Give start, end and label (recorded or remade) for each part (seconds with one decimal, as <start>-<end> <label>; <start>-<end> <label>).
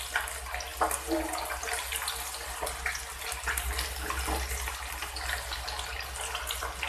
0.0-6.9 recorded